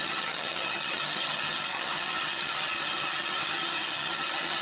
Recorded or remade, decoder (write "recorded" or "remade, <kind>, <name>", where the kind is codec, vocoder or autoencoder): remade, vocoder, HiFi-GAN